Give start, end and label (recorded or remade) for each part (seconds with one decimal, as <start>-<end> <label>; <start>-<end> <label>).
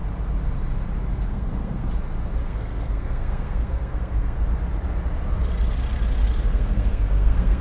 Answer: 0.0-1.3 recorded; 1.3-1.9 remade; 1.9-2.4 recorded; 2.4-4.4 remade; 4.4-6.5 recorded; 6.5-7.6 remade